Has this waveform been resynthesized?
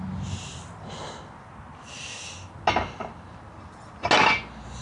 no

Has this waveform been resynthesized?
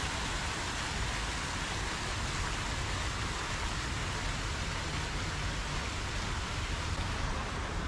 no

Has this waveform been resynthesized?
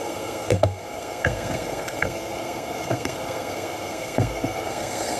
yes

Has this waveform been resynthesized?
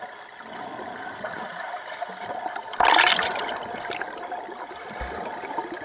no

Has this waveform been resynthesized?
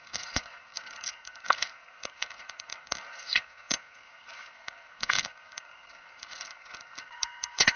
yes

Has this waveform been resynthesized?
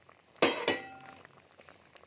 no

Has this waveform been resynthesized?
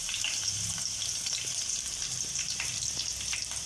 yes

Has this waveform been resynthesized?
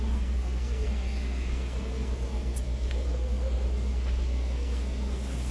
yes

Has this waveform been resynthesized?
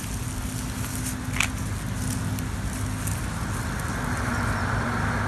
no